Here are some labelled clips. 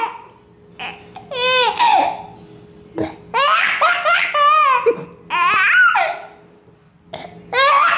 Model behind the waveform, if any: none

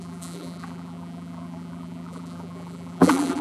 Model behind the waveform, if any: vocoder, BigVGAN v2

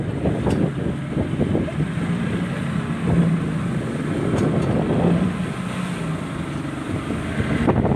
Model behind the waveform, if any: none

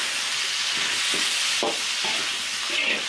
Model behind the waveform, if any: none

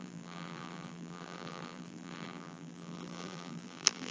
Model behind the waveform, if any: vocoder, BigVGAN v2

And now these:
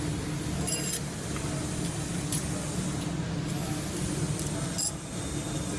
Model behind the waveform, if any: none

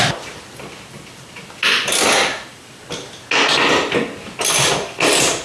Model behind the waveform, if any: none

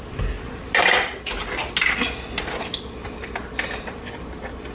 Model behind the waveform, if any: none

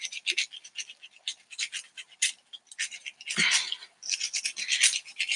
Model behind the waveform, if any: none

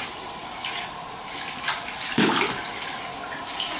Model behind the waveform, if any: none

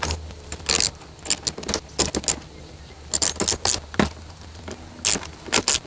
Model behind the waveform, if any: none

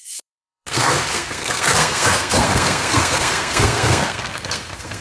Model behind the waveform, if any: codec, SNAC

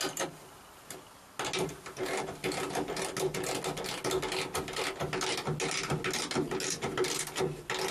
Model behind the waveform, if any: none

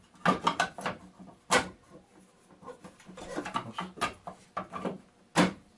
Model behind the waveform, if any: none